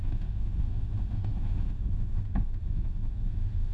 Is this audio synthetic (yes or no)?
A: yes